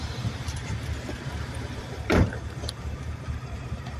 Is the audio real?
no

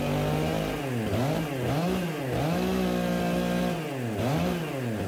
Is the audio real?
yes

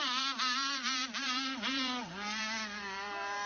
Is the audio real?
no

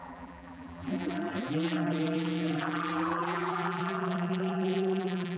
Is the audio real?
no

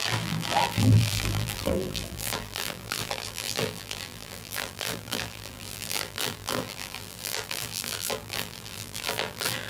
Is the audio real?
no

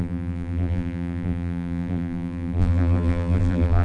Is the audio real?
no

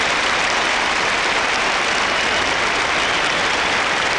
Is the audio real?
no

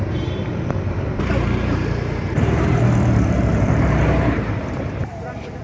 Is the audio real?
no